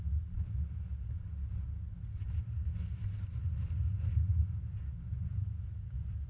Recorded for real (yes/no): yes